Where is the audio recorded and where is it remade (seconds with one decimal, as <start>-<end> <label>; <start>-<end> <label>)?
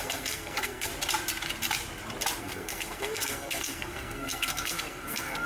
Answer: 0.0-0.9 remade; 0.9-2.4 recorded; 2.4-5.5 remade